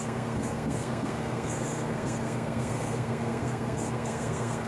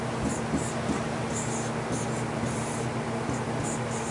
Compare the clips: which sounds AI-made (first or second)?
first